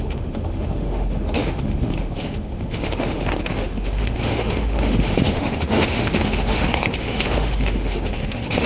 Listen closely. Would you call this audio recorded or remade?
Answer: remade